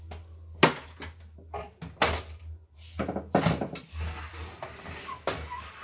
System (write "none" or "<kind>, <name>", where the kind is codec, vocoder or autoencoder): none